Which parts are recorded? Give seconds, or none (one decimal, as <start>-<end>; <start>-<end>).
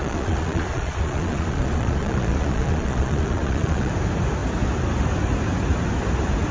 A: 3.9-6.5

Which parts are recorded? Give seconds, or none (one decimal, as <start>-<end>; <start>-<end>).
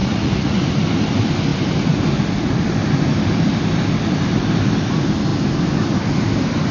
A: 0.6-6.7